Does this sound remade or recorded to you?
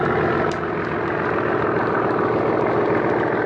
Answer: recorded